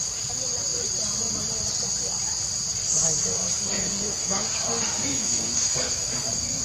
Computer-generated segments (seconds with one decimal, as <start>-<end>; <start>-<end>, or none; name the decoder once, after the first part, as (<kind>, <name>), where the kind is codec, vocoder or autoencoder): 3.3-6.6 (codec, SNAC)